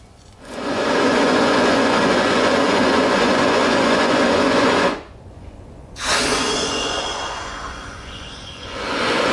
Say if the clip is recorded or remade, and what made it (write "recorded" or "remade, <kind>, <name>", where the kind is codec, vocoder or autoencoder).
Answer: remade, vocoder, Vocos